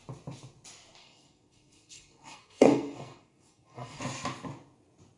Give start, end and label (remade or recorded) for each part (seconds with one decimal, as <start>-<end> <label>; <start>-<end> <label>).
0.0-1.0 recorded; 1.0-4.0 remade; 4.0-5.2 recorded